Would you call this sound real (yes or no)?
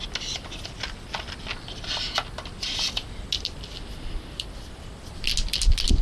yes